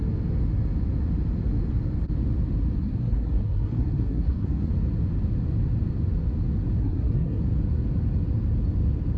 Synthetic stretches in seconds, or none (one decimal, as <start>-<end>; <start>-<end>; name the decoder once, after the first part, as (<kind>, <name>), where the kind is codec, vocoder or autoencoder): 2.8-4.7 (codec, SNAC); 6.8-7.4